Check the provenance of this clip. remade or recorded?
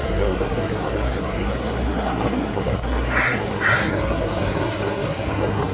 remade